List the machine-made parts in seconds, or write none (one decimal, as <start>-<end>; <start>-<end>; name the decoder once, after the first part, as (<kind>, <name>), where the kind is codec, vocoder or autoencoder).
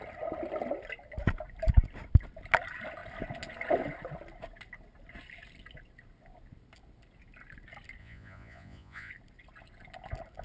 8.0-9.1 (vocoder, Vocos)